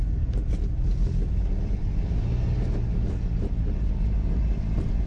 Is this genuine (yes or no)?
yes